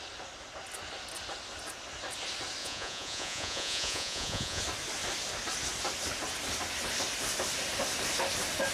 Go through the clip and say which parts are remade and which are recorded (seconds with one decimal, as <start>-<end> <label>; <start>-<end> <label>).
0.0-2.6 recorded; 2.6-4.6 remade; 4.6-8.7 recorded